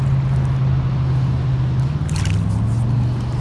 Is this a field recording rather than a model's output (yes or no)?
yes